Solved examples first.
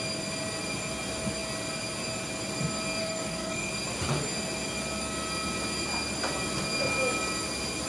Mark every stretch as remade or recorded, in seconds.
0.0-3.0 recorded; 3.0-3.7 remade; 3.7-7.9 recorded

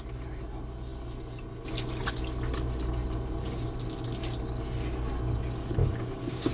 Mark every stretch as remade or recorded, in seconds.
0.0-5.8 recorded; 5.8-6.5 remade

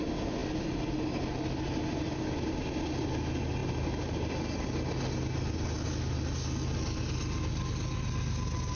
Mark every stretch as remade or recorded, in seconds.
0.0-8.8 recorded

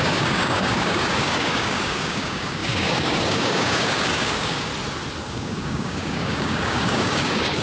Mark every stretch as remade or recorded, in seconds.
0.0-4.7 remade; 4.7-5.2 recorded; 5.2-7.6 remade